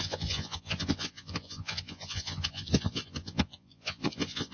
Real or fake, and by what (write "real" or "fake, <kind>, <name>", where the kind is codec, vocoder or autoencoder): fake, vocoder, Vocos